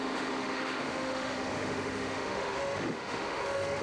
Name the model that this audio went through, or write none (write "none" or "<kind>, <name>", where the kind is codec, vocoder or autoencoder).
autoencoder, DAC-VAE